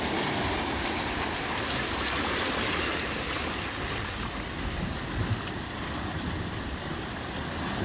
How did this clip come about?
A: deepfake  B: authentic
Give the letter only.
B